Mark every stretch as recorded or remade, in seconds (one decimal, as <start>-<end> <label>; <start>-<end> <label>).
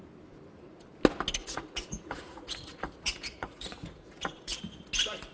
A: 0.0-1.4 recorded; 1.4-4.6 remade; 4.6-5.3 recorded